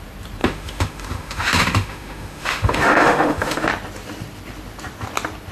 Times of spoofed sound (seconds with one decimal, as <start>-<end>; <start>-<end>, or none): 0.4-3.7